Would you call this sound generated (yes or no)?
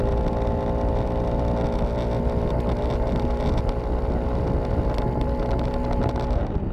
no